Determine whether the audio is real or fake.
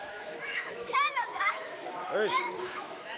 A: fake